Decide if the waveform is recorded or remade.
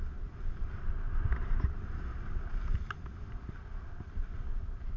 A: recorded